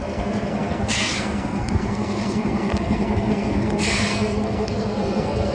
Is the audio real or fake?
fake